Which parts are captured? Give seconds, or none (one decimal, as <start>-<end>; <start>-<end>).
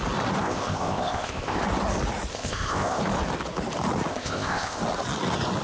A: 0.0-0.4; 1.6-2.3; 3.0-4.1; 4.8-5.6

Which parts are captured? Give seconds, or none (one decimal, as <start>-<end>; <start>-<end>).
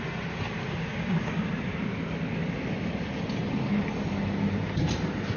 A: 0.0-0.6; 1.5-5.4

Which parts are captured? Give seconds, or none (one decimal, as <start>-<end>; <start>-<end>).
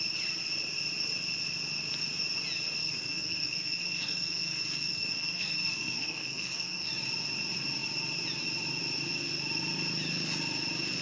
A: 0.0-2.8; 6.9-11.0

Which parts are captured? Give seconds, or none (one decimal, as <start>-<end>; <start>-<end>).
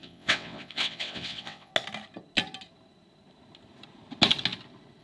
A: 1.7-5.0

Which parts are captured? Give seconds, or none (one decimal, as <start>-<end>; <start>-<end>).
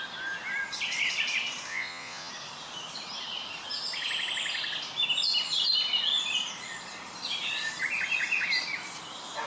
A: 0.0-1.7; 2.3-9.5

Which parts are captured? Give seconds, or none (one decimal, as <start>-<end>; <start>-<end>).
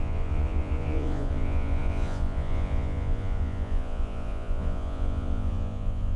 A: none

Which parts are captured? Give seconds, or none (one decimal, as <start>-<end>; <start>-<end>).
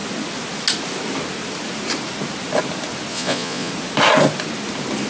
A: 0.0-3.1; 3.7-5.1